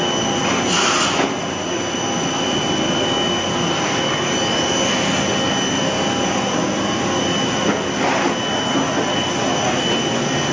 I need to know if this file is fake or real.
real